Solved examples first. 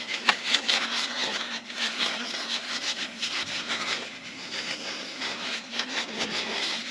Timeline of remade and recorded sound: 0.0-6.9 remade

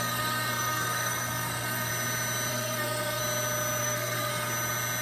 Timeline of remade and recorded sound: 0.0-1.9 remade; 1.9-2.5 recorded; 2.5-3.2 remade; 3.2-3.8 recorded; 3.8-4.3 remade; 4.3-5.0 recorded

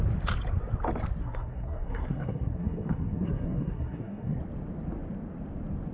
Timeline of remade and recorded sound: 0.0-1.2 recorded; 1.2-4.4 remade; 4.4-5.9 recorded

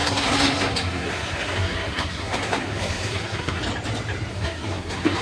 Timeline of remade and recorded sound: 0.0-3.6 remade; 3.6-4.3 recorded; 4.3-5.2 remade

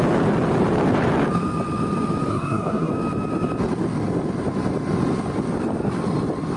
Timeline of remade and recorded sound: 0.0-2.3 recorded; 2.3-2.9 remade; 2.9-6.6 recorded

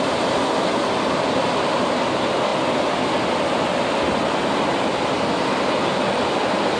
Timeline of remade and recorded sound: 0.0-6.8 recorded